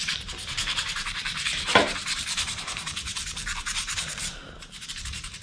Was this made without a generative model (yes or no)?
no